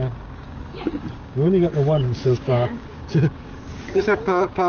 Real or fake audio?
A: fake